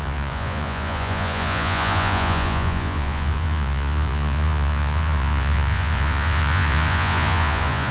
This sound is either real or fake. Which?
fake